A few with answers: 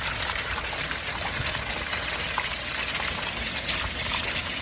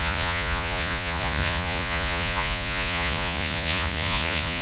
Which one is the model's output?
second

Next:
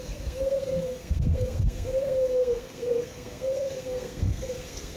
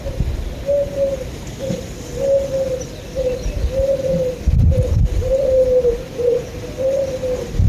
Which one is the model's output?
first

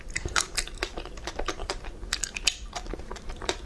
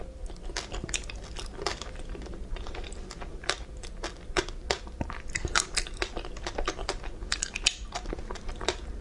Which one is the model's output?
first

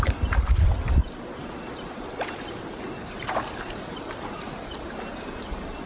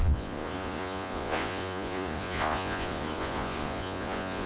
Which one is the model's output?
second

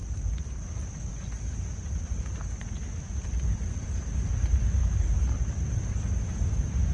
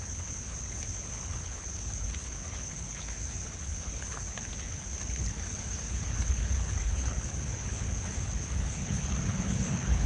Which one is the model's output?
second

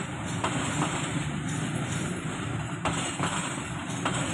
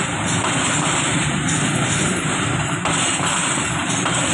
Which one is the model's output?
second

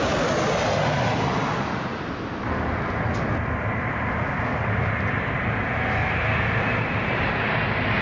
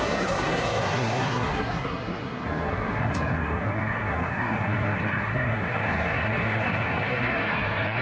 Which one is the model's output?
second